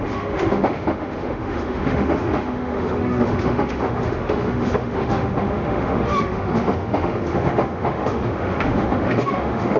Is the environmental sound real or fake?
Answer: fake